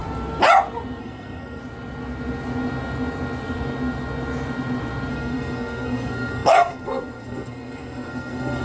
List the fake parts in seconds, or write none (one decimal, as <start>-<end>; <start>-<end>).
1.0-1.6; 5.1-8.6

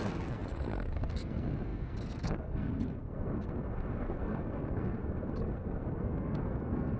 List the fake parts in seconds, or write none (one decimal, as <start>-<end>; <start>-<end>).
0.0-7.0

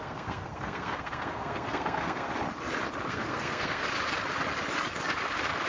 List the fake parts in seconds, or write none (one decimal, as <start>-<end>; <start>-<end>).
0.0-2.3; 3.1-3.8

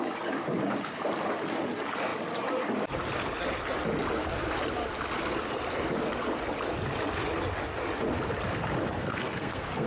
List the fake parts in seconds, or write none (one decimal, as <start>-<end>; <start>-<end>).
9.0-9.9

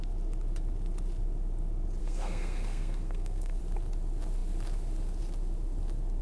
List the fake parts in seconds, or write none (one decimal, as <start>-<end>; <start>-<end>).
2.0-3.6

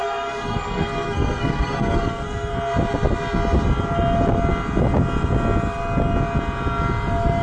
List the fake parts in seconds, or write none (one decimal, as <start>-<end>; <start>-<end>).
0.0-2.5

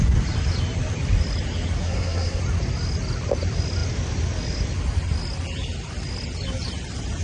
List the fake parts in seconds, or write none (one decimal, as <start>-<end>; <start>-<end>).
1.8-2.4